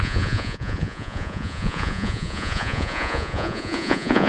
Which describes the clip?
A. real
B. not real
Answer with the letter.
B